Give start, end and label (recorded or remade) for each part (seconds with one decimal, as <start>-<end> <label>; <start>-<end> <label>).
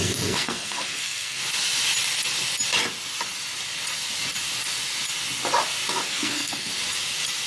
0.0-1.4 remade; 1.4-5.9 recorded; 5.9-6.7 remade; 6.7-7.5 recorded